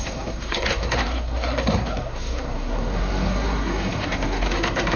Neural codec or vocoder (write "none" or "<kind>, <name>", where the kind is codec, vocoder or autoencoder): codec, SNAC